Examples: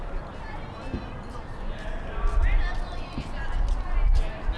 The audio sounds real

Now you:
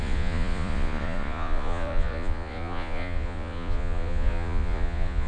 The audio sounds fake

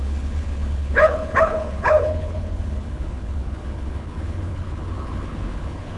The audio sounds fake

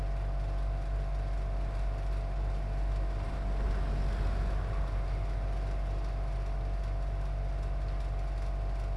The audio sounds real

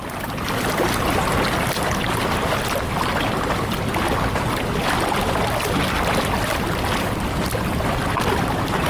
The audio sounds real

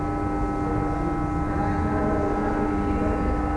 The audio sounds real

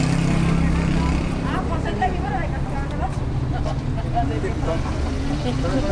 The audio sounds real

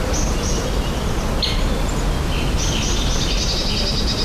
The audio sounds real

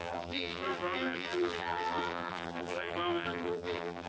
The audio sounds fake